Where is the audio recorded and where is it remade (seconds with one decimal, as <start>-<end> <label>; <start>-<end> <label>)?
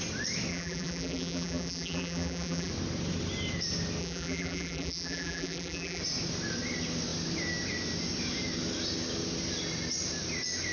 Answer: 0.0-0.5 recorded; 0.5-2.7 remade; 2.7-4.0 recorded; 4.0-6.0 remade; 6.0-10.7 recorded